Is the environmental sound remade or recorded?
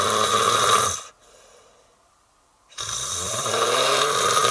remade